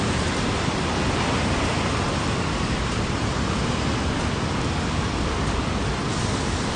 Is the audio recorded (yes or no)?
yes